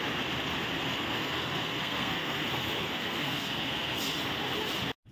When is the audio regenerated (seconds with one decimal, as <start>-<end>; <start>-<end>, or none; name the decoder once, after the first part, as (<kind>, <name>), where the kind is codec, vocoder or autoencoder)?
0.9-4.0 (codec, SNAC)